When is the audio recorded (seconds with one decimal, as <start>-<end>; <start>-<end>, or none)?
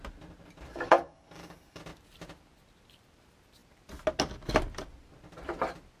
0.0-0.7; 1.8-6.0